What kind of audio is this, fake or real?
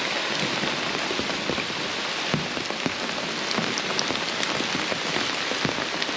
real